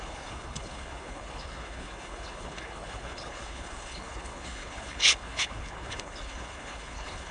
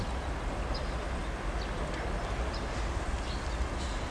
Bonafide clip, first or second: second